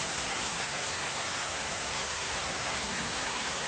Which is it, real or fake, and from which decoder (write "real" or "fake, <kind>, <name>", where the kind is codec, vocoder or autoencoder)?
fake, codec, SNAC